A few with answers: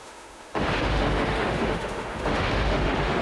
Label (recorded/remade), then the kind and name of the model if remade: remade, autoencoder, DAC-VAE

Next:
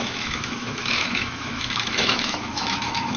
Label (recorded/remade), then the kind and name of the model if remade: remade, autoencoder, DAC-VAE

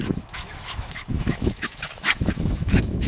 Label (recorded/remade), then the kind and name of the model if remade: remade, autoencoder, DAC-VAE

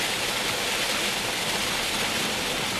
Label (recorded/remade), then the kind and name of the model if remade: recorded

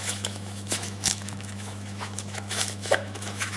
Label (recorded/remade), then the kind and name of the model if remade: remade, autoencoder, DAC-VAE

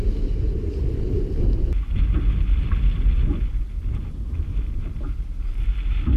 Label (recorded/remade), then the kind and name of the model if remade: recorded